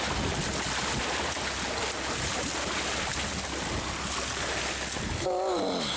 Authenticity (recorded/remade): recorded